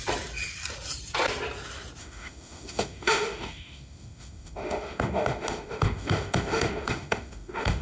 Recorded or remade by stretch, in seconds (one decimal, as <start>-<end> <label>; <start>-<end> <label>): 0.0-2.0 recorded; 2.0-7.8 remade